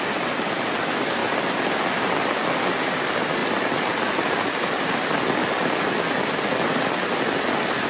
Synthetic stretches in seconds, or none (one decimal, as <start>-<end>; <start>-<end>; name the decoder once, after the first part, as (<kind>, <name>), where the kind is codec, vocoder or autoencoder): none